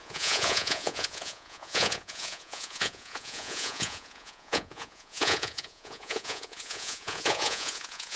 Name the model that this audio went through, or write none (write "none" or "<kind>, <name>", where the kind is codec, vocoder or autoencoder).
vocoder, Vocos